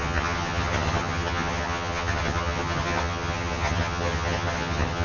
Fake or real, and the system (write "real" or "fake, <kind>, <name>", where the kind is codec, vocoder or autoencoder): fake, vocoder, HiFi-GAN